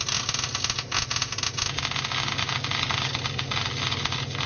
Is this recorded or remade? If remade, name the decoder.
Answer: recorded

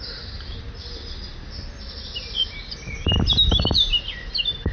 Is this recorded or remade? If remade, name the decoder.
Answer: recorded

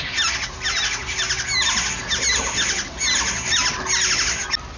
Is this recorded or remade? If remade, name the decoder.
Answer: recorded